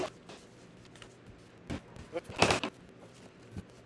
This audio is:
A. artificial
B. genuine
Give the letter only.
B